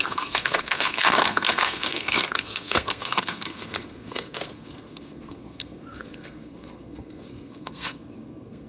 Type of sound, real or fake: fake